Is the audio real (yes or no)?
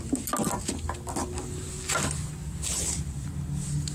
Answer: yes